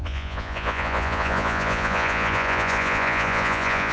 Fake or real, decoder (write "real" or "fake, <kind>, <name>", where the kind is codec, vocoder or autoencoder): fake, vocoder, Vocos